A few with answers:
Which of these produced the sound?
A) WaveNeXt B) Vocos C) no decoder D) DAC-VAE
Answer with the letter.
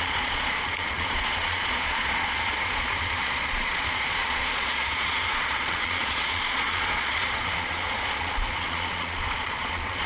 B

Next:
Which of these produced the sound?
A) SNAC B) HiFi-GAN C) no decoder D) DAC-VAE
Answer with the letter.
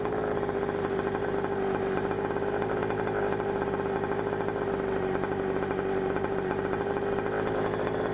C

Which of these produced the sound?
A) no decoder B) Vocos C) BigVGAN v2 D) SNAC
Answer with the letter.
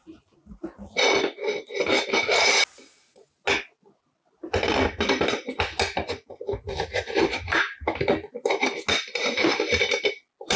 A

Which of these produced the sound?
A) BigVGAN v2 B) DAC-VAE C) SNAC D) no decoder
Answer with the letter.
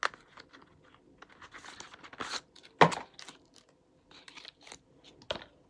D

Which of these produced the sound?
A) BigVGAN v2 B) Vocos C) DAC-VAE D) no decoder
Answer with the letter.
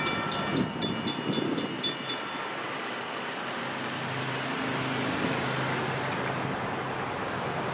D